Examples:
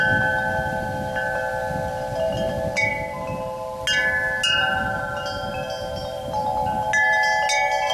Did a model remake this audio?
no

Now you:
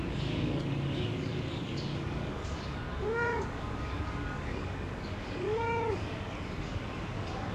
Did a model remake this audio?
yes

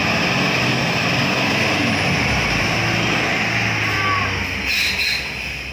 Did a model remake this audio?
no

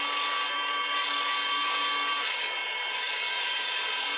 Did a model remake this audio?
yes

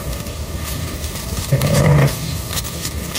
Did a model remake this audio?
yes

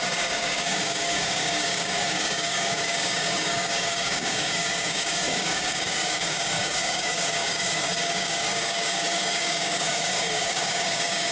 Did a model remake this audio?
yes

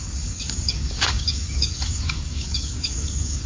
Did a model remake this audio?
yes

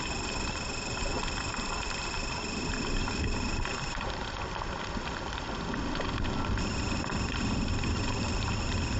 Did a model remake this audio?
no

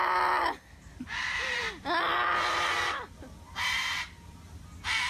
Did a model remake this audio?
no